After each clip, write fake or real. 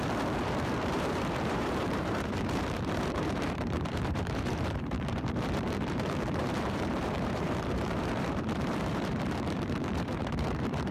fake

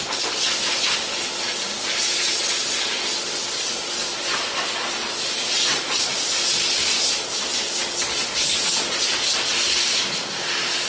real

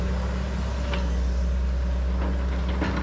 real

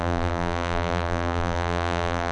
fake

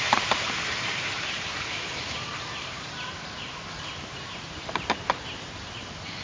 fake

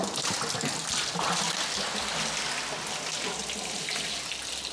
real